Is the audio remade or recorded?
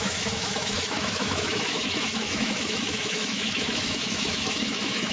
remade